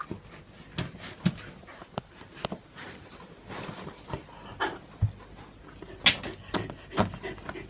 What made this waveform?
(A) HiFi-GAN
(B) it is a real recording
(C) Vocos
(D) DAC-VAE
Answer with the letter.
B